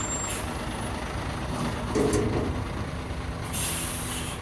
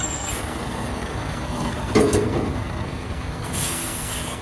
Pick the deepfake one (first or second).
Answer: second